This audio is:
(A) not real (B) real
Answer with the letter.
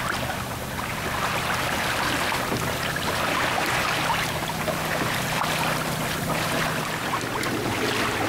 B